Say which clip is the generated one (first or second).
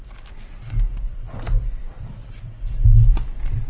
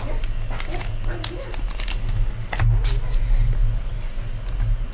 first